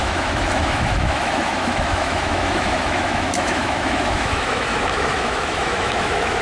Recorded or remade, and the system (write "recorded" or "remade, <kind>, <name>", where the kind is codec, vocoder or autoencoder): remade, autoencoder, DAC-VAE